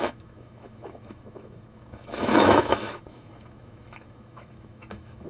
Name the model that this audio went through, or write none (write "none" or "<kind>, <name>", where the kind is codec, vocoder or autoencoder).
autoencoder, DAC-VAE